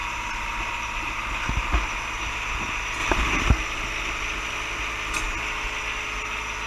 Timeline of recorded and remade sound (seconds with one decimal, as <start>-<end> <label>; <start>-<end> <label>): 0.0-0.6 remade; 0.6-3.0 recorded; 3.0-3.5 remade; 3.5-6.7 recorded

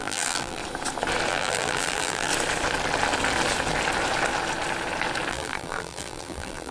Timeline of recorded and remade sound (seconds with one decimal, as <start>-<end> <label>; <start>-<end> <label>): 0.0-0.6 remade; 0.6-1.3 recorded; 1.3-2.3 remade; 2.3-5.3 recorded; 5.3-6.7 remade

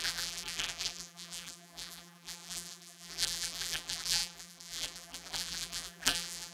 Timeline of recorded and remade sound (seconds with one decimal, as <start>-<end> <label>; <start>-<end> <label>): 0.0-6.5 remade

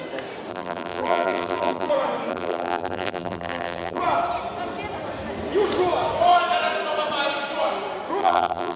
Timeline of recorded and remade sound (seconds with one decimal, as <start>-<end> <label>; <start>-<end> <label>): 0.0-0.5 recorded; 0.5-1.9 remade; 1.9-2.3 recorded; 2.3-4.0 remade; 4.0-8.2 recorded; 8.2-8.8 remade